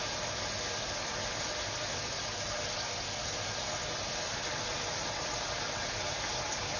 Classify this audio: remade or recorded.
recorded